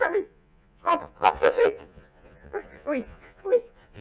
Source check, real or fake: fake